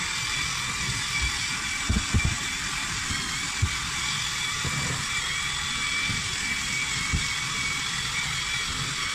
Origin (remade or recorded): remade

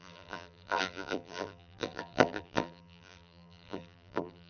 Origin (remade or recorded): remade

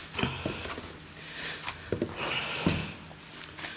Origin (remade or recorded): recorded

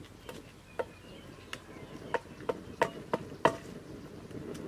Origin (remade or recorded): recorded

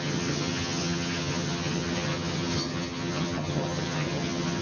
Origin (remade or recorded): remade